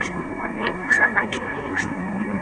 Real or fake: fake